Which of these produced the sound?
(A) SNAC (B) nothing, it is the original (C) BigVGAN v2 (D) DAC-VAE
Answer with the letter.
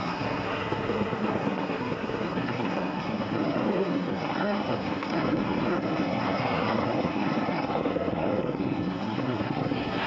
A